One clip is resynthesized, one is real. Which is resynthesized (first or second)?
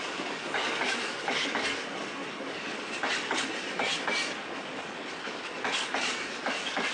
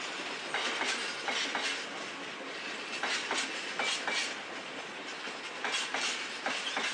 first